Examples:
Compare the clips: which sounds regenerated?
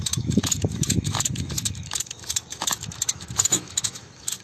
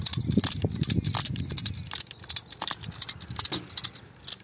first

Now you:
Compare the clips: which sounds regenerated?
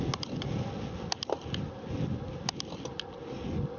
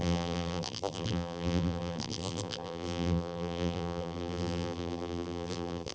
second